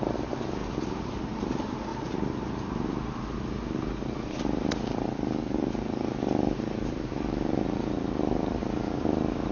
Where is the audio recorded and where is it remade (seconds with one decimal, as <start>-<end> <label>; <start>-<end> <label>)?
0.0-0.6 recorded; 0.6-1.5 remade; 1.5-9.5 recorded